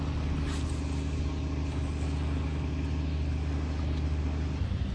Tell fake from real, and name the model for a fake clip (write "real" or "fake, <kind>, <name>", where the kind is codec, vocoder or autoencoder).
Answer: real